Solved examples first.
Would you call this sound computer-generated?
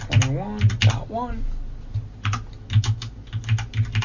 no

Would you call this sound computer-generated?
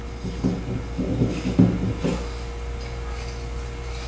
no